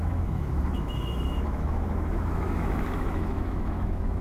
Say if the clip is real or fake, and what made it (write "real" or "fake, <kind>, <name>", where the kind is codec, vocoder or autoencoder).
fake, autoencoder, DAC-VAE